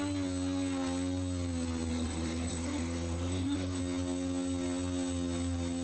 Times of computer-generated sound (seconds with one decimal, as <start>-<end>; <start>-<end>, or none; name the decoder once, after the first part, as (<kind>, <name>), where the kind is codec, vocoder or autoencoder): 1.9-3.8 (codec, SNAC)